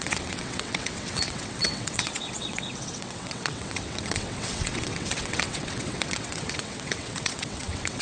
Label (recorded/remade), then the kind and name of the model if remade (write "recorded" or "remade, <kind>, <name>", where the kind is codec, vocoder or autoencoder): remade, vocoder, WaveNeXt